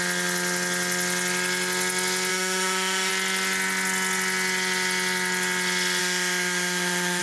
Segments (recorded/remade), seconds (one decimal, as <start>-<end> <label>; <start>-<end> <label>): 0.0-2.3 recorded; 2.3-3.1 remade; 3.1-6.0 recorded; 6.0-7.2 remade